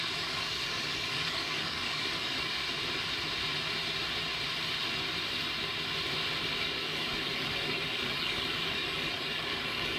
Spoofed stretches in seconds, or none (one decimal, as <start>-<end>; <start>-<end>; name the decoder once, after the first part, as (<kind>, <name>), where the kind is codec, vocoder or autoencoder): 0.0-2.6 (codec, DAC); 6.6-10.0